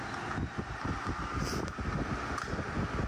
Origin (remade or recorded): recorded